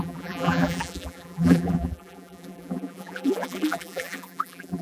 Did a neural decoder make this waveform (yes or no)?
yes